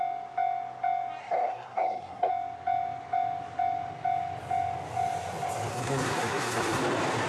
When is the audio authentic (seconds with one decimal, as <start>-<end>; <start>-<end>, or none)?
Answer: 0.0-1.2; 2.3-5.7; 6.8-7.3

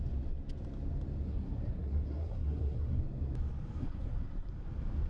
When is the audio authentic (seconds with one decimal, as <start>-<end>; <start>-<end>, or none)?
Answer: 0.0-1.2; 3.0-3.8; 4.5-5.1

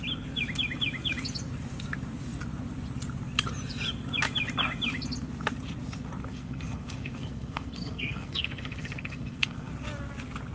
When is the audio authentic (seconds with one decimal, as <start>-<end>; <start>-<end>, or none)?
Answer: 0.0-6.3; 9.7-10.5